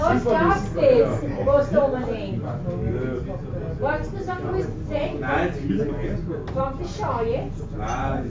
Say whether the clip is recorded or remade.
recorded